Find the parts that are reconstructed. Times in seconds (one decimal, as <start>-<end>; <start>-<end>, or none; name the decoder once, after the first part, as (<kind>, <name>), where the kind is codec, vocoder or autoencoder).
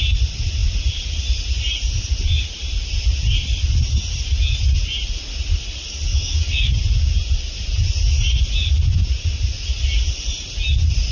6.1-6.7 (codec, DAC)